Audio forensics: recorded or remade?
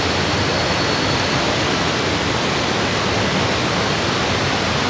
recorded